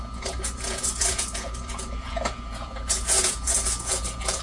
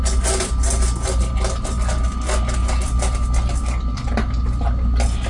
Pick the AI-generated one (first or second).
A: first